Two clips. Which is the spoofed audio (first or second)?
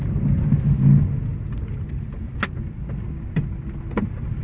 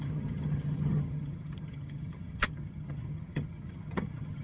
second